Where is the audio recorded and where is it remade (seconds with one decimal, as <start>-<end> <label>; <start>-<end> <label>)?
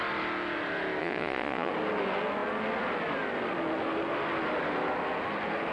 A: 0.0-1.0 recorded; 1.0-1.7 remade; 1.7-5.7 recorded